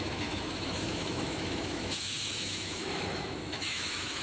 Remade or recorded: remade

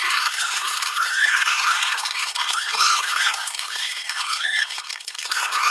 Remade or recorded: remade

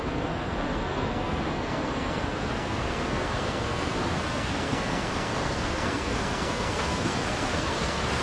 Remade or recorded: remade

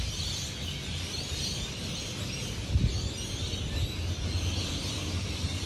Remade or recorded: recorded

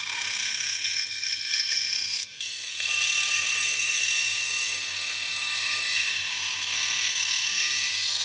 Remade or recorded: remade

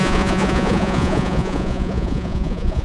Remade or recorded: remade